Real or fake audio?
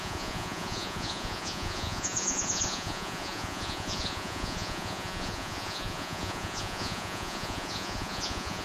fake